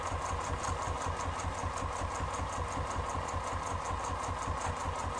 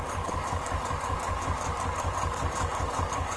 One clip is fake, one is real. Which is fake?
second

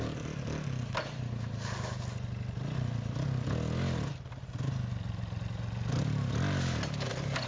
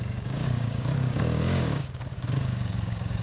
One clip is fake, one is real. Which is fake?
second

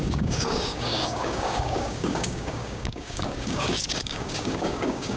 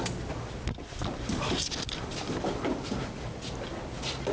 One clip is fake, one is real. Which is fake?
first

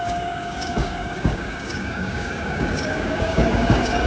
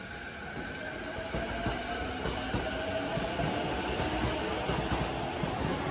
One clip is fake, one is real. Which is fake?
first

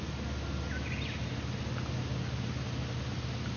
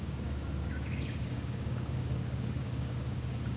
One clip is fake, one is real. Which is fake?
second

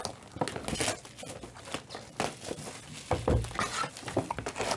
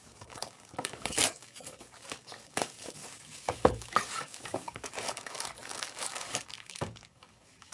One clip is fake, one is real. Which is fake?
second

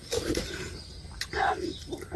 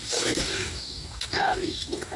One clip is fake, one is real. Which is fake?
second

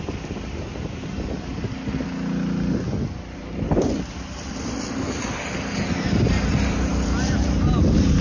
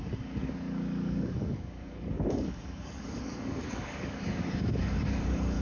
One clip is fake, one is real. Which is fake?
second